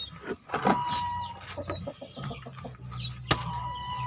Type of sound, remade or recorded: recorded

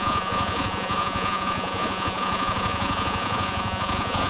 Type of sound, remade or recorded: remade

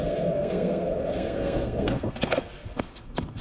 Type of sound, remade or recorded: remade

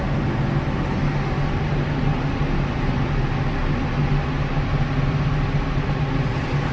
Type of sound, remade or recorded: recorded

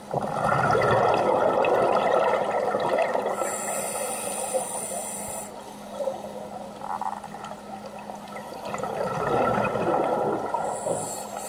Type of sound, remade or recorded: recorded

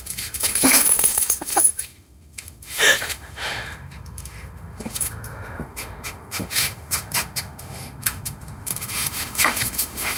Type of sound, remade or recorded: remade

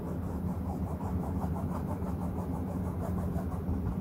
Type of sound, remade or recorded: recorded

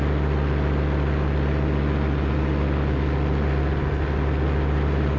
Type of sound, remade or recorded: recorded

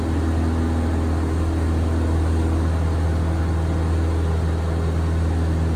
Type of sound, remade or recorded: recorded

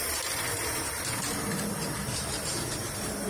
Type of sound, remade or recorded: remade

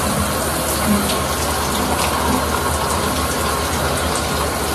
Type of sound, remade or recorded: recorded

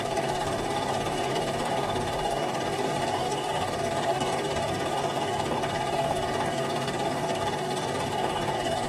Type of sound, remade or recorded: remade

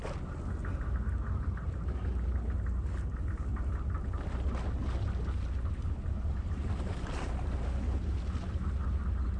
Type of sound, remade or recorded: recorded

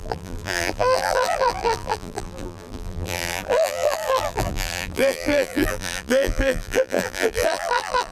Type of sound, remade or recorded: remade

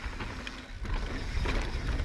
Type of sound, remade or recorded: recorded